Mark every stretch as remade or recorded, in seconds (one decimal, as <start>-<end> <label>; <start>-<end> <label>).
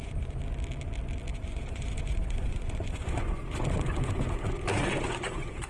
0.0-0.4 remade; 0.4-1.3 recorded; 1.3-5.7 remade